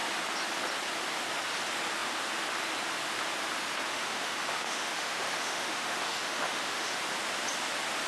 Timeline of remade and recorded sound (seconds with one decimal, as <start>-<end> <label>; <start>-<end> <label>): 0.0-3.9 recorded; 3.9-7.0 remade; 7.0-8.1 recorded